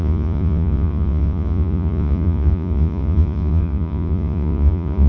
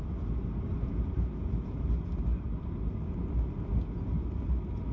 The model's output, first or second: first